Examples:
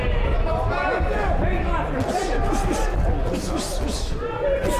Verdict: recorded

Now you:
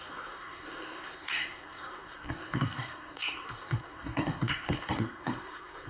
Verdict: remade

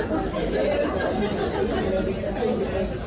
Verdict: recorded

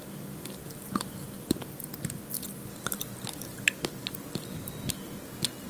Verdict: recorded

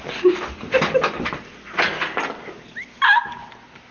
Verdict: recorded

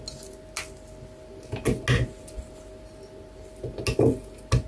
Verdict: recorded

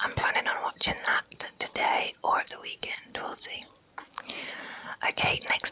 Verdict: remade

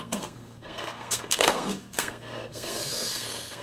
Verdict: remade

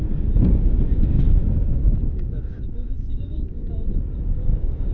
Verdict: remade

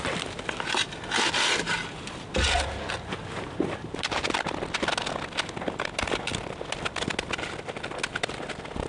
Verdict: recorded